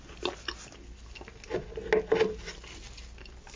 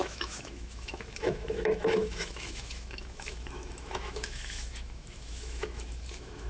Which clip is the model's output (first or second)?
second